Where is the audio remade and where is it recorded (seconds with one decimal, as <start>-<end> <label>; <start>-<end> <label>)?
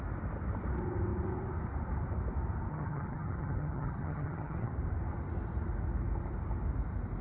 0.0-2.7 recorded; 2.7-4.7 remade; 4.7-7.2 recorded